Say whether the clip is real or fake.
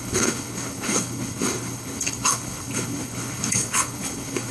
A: fake